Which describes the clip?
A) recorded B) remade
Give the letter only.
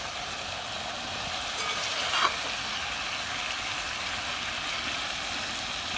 A